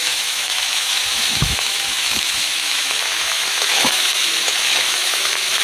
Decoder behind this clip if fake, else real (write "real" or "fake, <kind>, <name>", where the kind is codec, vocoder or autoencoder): fake, autoencoder, DAC-VAE